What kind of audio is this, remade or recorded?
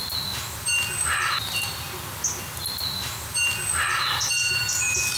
recorded